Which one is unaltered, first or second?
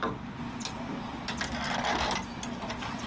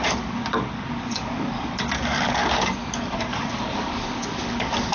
first